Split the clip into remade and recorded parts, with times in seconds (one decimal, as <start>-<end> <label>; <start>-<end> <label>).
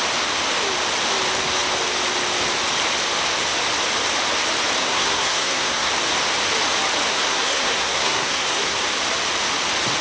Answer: 0.0-4.8 recorded; 4.8-5.9 remade; 5.9-7.1 recorded; 7.1-8.8 remade; 8.8-10.0 recorded